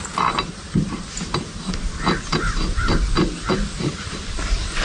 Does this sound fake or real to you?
real